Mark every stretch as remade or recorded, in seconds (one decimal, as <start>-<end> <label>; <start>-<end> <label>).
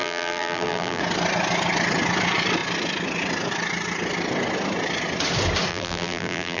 0.0-1.0 remade; 1.0-5.7 recorded; 5.7-6.6 remade